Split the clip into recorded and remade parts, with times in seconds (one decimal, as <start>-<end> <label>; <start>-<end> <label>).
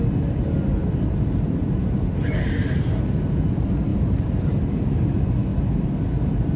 0.0-0.8 recorded; 0.8-3.4 remade; 3.4-3.9 recorded; 3.9-5.1 remade; 5.1-5.5 recorded; 5.5-6.6 remade